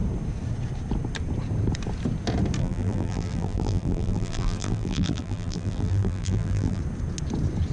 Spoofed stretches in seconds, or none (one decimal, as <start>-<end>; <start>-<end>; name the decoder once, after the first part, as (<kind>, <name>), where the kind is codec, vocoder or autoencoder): 2.6-6.8 (vocoder, BigVGAN v2)